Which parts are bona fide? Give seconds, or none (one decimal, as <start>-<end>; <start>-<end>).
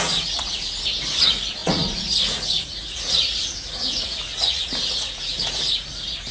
none